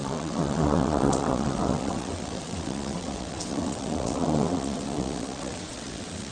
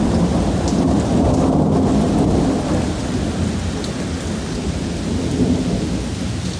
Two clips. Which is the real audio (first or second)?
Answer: second